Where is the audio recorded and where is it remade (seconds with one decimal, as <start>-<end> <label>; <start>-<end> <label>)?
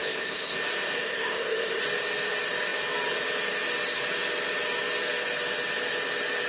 0.0-0.6 remade; 0.6-1.0 recorded; 1.0-1.8 remade; 1.8-6.5 recorded